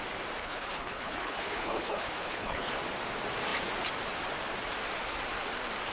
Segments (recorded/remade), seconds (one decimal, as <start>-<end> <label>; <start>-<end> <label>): 0.0-0.4 recorded; 0.4-2.7 remade; 2.7-5.9 recorded